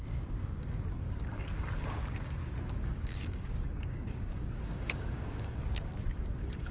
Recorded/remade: remade